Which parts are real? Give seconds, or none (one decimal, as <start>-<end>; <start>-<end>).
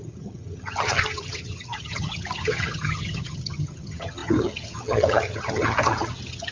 none